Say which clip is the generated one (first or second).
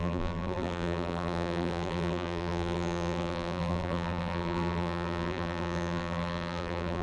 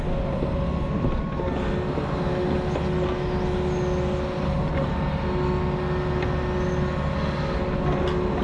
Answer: first